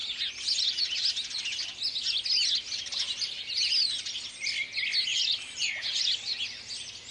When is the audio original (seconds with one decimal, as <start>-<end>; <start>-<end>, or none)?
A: 0.0-5.1; 5.7-7.1